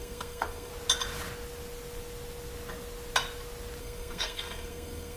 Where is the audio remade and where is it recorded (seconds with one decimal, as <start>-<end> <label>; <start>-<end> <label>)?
0.0-0.7 remade; 0.7-3.8 recorded; 3.8-5.2 remade